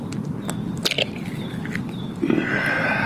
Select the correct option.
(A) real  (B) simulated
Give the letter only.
A